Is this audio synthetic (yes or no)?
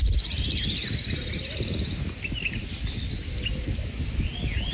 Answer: no